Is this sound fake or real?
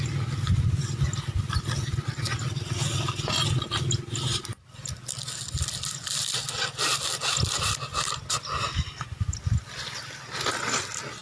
real